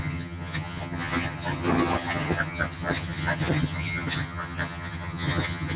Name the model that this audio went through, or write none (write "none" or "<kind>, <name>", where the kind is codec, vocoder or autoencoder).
vocoder, HiFi-GAN